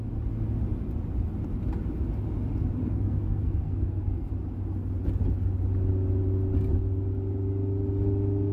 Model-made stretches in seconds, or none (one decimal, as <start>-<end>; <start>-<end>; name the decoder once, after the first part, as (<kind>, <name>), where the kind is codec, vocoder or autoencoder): 2.8-4.3 (codec, SNAC)